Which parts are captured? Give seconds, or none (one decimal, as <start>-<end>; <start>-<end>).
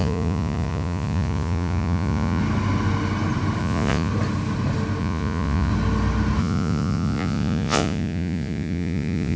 2.4-3.6; 4.1-5.0; 5.7-6.4